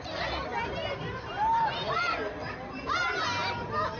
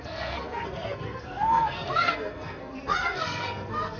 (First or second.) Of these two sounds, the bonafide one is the first